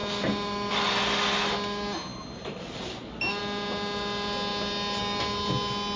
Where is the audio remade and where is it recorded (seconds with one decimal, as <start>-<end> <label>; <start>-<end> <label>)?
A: 0.0-6.0 recorded